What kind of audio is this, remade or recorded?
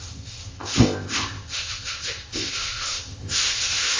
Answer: remade